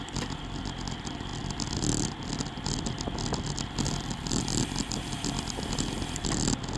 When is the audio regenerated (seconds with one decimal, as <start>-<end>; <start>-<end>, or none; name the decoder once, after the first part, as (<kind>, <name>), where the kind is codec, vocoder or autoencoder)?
none